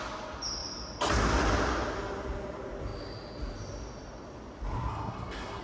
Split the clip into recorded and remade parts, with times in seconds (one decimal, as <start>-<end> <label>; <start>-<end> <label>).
0.0-4.9 recorded; 4.9-5.6 remade